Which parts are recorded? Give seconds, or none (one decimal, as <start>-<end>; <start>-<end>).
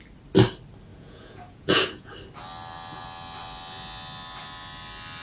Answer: 0.0-0.9; 2.1-5.2